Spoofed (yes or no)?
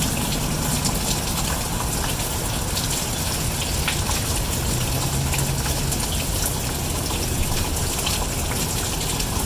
no